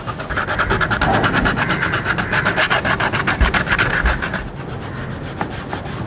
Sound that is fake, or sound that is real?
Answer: real